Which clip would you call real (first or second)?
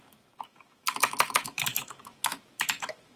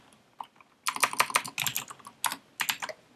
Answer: second